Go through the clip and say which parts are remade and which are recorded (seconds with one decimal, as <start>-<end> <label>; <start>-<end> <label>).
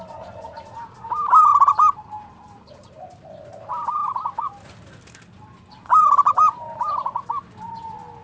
0.0-1.5 recorded; 1.5-3.3 remade; 3.3-4.0 recorded; 4.0-4.7 remade; 4.7-8.2 recorded